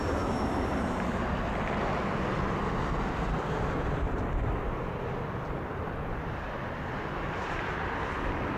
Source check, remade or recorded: recorded